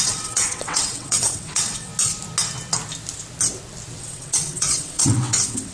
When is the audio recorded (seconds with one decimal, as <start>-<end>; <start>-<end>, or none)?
1.9-4.0